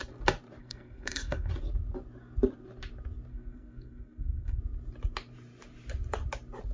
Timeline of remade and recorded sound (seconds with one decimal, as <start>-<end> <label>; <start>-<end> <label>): 0.0-0.6 recorded; 0.6-1.5 remade; 1.5-3.3 recorded; 3.3-4.6 remade; 4.6-6.7 recorded